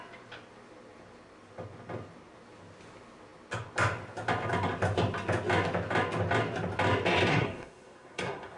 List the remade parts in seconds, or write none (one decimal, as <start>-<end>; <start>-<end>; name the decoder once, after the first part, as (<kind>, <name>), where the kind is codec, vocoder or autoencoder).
7.3-8.6 (codec, SNAC)